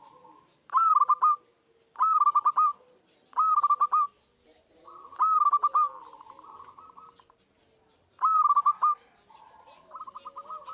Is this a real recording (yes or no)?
yes